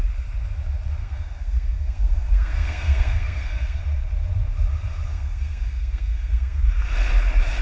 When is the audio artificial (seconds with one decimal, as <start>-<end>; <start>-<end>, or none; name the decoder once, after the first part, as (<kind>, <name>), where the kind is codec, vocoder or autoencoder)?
1.0-3.8 (codec, SNAC); 5.1-6.7